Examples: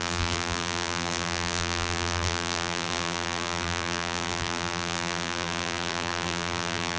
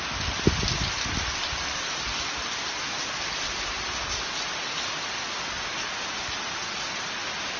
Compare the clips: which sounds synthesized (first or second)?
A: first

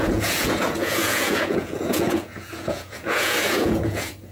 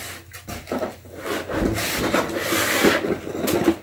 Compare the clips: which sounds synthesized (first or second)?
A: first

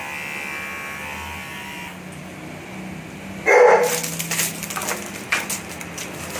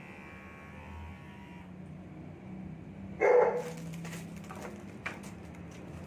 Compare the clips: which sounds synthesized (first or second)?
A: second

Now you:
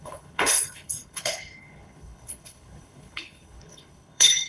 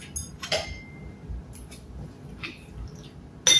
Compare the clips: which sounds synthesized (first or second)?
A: first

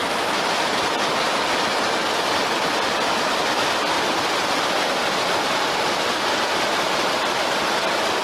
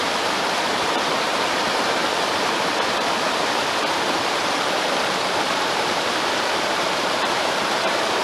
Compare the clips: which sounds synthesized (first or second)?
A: second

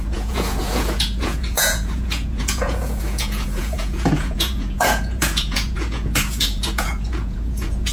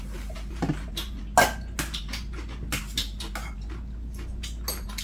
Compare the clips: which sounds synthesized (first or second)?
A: first